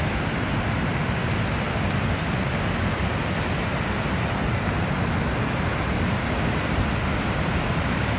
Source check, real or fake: real